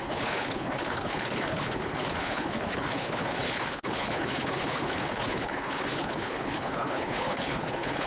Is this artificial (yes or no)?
yes